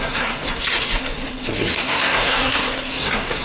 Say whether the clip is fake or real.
fake